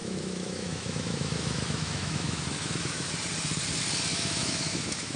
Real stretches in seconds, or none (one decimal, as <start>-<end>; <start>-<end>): 3.1-4.1